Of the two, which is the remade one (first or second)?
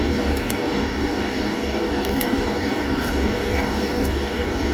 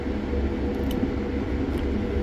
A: first